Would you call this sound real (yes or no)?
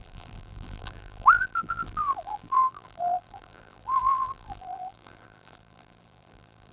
no